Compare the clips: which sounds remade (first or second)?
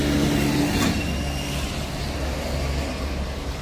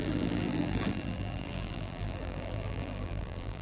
second